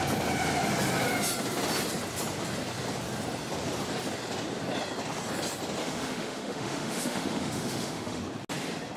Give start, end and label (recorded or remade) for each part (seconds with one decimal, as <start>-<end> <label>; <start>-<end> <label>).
0.0-5.8 recorded; 5.8-8.2 remade; 8.2-9.0 recorded

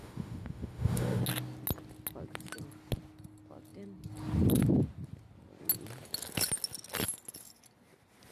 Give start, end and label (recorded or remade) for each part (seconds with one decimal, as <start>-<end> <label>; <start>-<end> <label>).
0.0-1.2 remade; 1.2-8.3 recorded

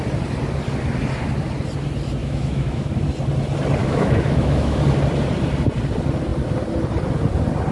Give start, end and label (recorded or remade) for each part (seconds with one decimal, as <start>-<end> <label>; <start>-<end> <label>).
0.0-2.2 recorded; 2.2-2.9 remade; 2.9-3.8 recorded; 3.8-4.8 remade; 4.8-7.7 recorded

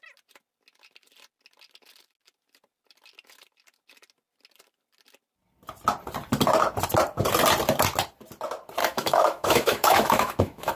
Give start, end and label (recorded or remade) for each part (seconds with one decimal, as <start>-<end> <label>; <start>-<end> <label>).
0.0-8.8 recorded; 8.8-10.8 remade

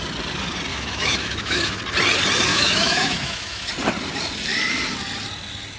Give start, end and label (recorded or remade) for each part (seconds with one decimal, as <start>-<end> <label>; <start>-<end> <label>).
0.0-0.7 recorded; 0.7-1.8 remade; 1.8-2.5 recorded; 2.5-3.7 remade; 3.7-5.8 recorded